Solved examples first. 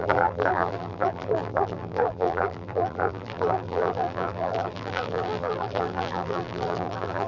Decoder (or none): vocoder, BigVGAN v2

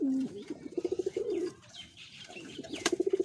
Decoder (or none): vocoder, BigVGAN v2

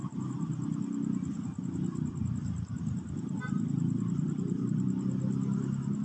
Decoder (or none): none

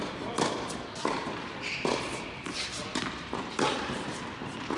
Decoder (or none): vocoder, BigVGAN v2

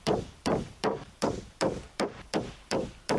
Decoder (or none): vocoder, BigVGAN v2